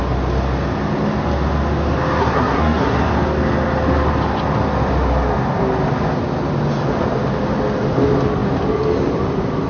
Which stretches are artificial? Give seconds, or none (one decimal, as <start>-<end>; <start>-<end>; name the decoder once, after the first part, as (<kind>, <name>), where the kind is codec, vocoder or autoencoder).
2.2-3.0 (codec, SNAC)